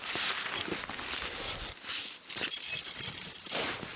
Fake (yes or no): no